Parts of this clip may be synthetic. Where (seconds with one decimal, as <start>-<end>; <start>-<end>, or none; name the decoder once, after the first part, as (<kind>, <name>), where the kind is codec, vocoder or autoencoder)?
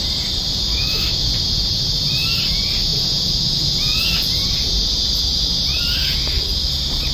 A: 0.7-1.3 (autoencoder, DAC-VAE)